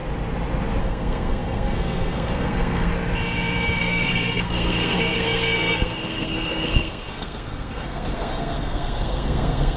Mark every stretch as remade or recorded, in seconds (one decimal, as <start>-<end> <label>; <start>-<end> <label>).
0.0-0.8 recorded; 0.8-2.9 remade; 2.9-3.8 recorded; 3.8-9.8 remade

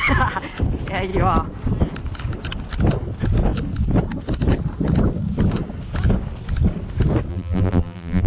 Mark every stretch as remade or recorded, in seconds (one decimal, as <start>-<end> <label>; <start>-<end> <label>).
0.0-7.3 recorded; 7.3-8.3 remade

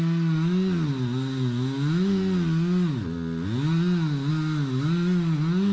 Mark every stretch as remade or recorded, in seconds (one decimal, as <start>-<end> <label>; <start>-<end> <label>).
0.0-5.7 recorded

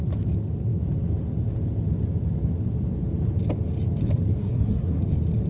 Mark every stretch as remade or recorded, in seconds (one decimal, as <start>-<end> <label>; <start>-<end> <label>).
0.0-4.4 recorded; 4.4-5.0 remade; 5.0-5.5 recorded